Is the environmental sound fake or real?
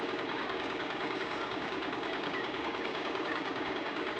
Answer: fake